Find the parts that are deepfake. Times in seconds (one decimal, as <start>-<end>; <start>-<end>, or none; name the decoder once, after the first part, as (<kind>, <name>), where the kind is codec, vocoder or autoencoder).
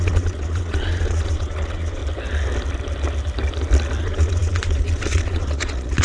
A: 0.0-2.0 (vocoder, Vocos); 4.0-6.0